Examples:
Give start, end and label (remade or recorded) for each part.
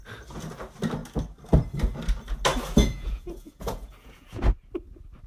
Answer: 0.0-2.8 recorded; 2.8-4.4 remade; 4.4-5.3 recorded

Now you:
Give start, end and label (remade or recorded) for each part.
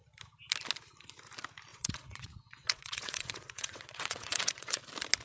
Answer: 0.0-1.7 recorded; 1.7-4.8 remade; 4.8-5.2 recorded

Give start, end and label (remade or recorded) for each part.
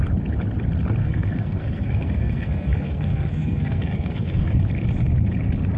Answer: 0.0-1.0 recorded; 1.0-4.5 remade; 4.5-5.8 recorded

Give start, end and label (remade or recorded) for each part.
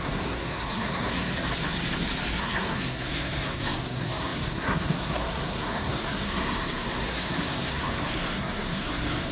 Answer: 0.0-1.3 remade; 1.3-2.4 recorded; 2.4-9.3 remade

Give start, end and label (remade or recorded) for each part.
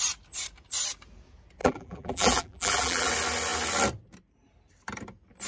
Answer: 0.0-1.6 recorded; 1.6-3.1 remade; 3.1-5.5 recorded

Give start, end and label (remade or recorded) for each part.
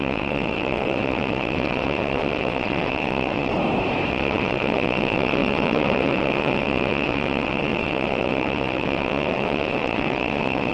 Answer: 0.0-3.5 remade; 3.5-4.1 recorded; 4.1-10.7 remade